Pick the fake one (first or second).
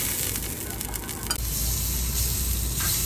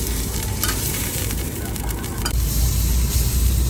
second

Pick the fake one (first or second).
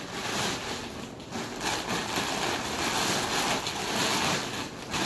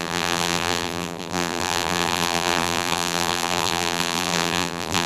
second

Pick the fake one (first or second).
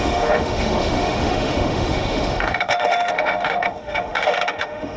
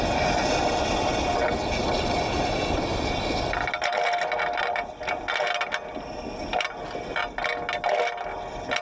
first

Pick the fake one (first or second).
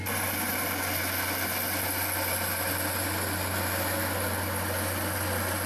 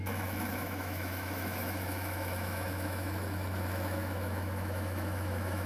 second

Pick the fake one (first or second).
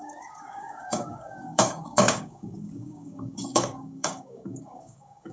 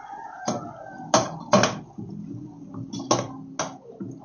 first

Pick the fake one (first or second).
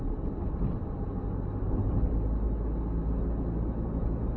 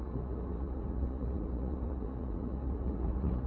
second